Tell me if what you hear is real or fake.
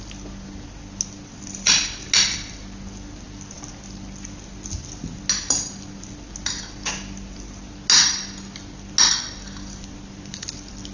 real